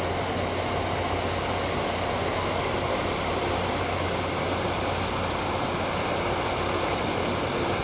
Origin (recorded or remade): recorded